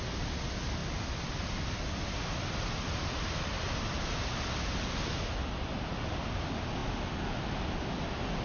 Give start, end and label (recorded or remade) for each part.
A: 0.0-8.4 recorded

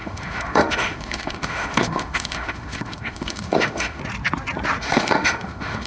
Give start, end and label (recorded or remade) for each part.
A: 0.0-4.0 remade; 4.0-4.8 recorded; 4.8-5.9 remade

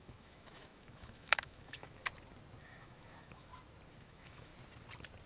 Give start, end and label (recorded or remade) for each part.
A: 0.0-2.0 remade; 2.0-2.6 recorded; 2.6-3.5 remade; 3.5-4.0 recorded; 4.0-4.5 remade; 4.5-5.3 recorded

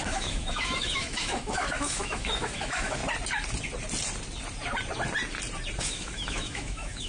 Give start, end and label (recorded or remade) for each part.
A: 0.0-3.0 remade; 3.0-5.8 recorded; 5.8-7.1 remade

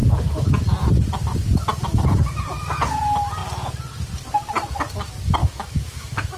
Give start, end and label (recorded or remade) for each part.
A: 0.0-5.4 recorded; 5.4-6.4 remade